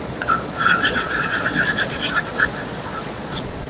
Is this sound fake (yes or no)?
yes